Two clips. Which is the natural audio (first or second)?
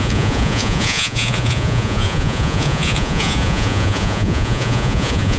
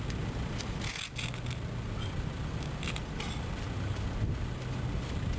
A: second